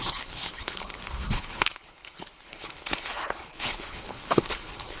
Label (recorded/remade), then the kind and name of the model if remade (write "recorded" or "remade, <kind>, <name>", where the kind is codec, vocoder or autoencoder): remade, codec, HILCodec